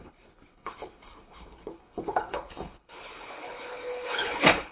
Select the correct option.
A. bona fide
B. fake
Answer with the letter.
B